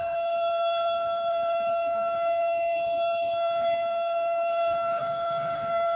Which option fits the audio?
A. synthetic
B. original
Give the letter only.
A